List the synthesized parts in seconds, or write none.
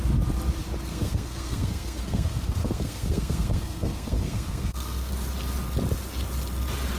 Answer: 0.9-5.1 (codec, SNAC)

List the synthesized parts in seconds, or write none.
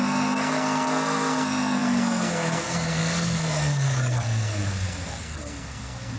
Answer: 0.0-6.2 (codec, SNAC)